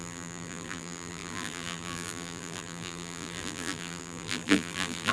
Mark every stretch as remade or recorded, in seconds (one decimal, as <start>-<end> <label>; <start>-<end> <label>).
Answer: 0.0-5.1 remade